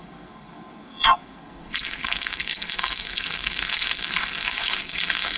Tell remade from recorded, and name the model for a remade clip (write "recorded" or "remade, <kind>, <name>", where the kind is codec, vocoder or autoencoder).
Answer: remade, codec, SNAC